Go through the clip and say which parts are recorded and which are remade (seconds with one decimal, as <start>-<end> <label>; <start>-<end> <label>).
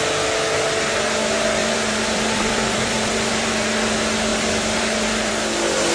0.0-1.6 recorded; 1.6-3.5 remade; 3.5-4.3 recorded; 4.3-5.3 remade; 5.3-5.9 recorded